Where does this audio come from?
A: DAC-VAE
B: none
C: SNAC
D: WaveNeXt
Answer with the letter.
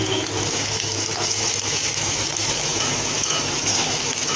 A